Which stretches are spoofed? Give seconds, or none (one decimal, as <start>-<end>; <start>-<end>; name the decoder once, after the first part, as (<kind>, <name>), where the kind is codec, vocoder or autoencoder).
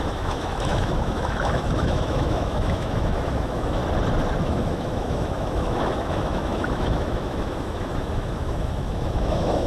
0.0-3.8 (autoencoder, DAC-VAE); 4.4-9.7